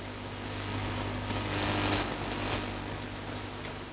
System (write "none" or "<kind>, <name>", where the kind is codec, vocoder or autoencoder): none